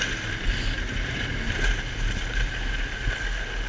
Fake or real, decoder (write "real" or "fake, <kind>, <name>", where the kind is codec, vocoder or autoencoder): real